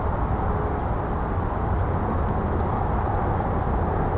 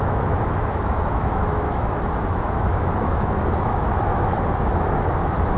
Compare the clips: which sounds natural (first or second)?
first